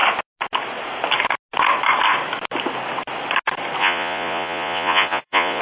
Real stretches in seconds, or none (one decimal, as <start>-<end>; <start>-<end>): 0.0-3.8